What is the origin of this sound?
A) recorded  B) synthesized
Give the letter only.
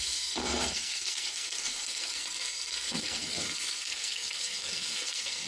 B